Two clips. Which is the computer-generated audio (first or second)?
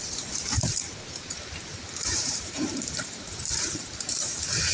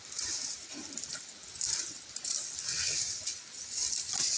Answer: first